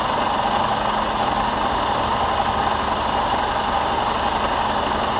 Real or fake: real